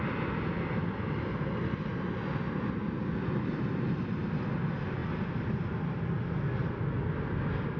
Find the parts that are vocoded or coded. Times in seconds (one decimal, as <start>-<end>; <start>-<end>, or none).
none